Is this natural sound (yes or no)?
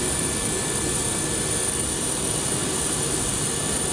yes